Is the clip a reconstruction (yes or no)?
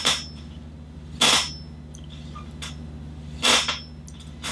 no